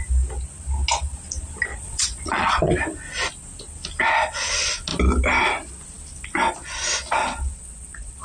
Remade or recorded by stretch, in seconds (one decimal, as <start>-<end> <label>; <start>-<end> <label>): 0.0-1.7 recorded; 1.7-2.7 remade; 2.7-7.5 recorded; 7.5-8.2 remade